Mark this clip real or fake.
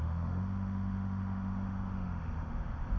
fake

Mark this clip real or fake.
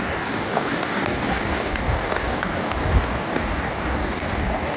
fake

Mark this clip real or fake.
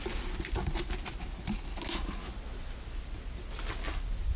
real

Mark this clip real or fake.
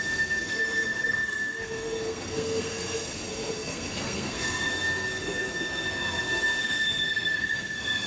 fake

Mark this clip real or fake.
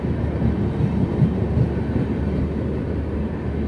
real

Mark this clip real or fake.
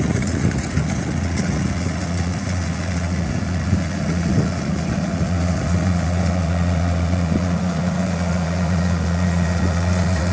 fake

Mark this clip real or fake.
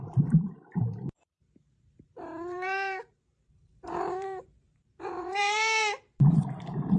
fake